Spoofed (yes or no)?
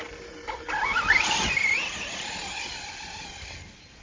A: no